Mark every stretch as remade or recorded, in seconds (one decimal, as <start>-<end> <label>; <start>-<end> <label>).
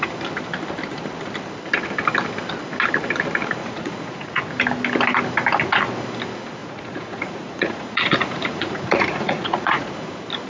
0.0-3.6 recorded; 3.6-4.4 remade; 4.4-6.6 recorded; 6.6-9.8 remade; 9.8-10.5 recorded